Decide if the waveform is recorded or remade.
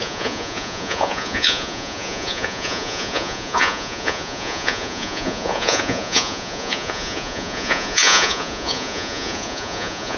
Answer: remade